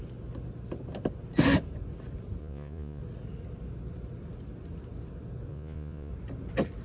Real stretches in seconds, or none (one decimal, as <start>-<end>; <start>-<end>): 0.0-2.4; 3.0-5.5; 6.1-6.8